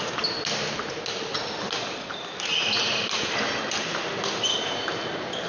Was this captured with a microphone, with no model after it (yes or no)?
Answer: yes